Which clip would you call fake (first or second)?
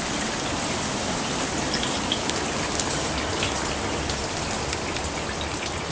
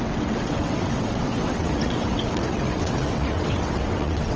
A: second